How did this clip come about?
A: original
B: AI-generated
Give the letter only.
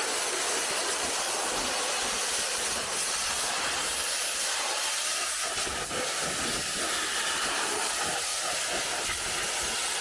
A